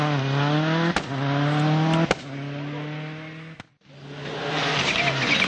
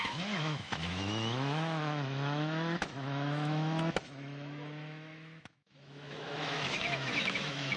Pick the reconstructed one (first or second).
second